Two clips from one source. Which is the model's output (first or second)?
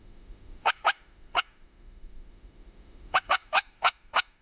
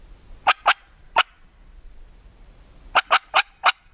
first